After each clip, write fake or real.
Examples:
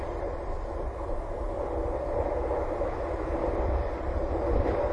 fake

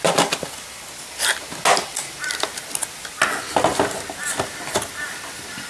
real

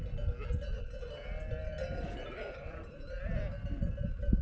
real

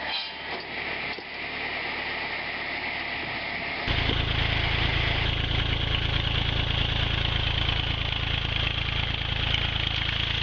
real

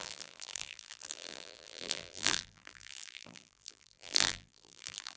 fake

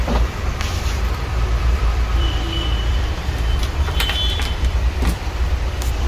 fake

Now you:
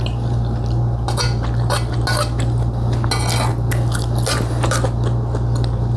real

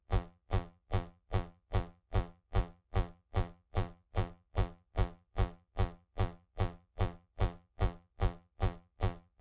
fake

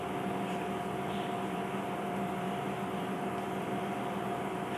real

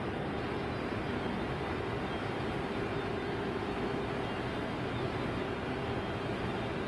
real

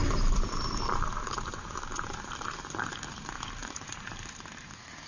fake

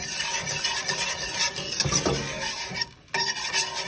real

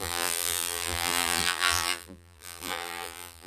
fake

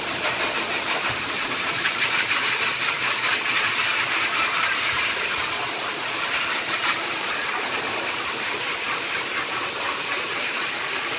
fake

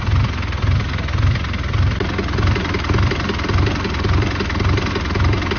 real